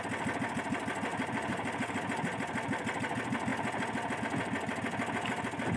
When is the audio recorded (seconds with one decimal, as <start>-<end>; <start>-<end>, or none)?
0.0-1.1; 2.0-5.8